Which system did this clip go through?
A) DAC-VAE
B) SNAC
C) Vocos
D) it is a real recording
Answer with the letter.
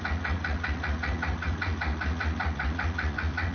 C